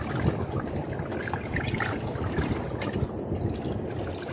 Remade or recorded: recorded